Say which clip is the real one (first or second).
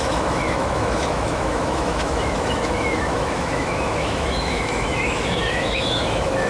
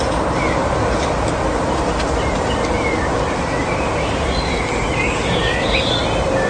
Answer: second